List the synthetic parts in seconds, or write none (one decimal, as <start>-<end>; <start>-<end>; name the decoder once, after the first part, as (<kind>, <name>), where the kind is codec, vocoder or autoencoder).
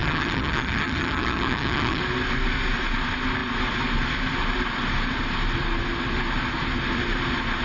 0.0-2.0 (vocoder, HiFi-GAN)